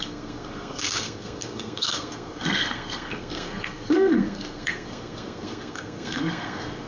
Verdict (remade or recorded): remade